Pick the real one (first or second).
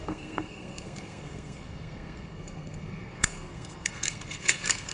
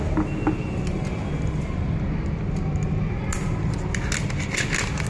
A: second